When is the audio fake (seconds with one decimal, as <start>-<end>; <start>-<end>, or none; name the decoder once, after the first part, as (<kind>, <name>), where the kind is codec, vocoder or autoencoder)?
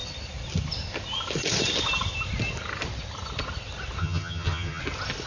4.0-4.8 (vocoder, HiFi-GAN)